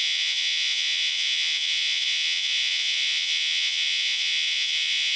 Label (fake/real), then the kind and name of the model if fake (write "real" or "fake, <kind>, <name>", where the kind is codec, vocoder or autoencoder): fake, vocoder, Vocos